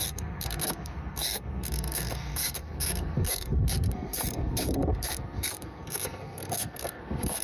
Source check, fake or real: fake